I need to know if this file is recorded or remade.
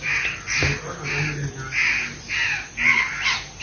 recorded